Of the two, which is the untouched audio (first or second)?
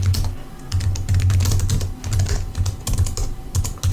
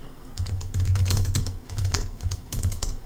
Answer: first